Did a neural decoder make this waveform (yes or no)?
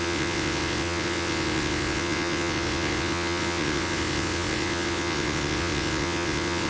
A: yes